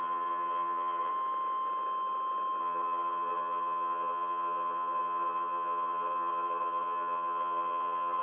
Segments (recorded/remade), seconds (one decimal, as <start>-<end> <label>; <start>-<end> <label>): 0.0-1.1 remade; 1.1-2.6 recorded; 2.6-8.2 remade